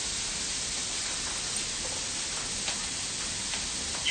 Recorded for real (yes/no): yes